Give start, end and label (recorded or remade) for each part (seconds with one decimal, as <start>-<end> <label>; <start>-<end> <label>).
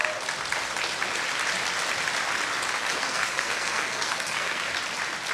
0.0-2.8 recorded; 2.8-4.7 remade; 4.7-5.3 recorded